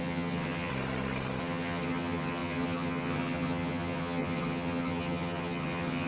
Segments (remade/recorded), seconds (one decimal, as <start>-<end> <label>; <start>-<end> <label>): 0.0-0.7 remade; 0.7-1.4 recorded; 1.4-6.1 remade